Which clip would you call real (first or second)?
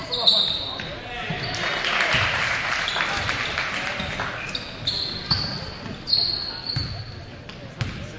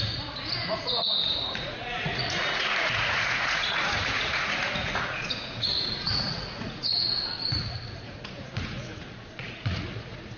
first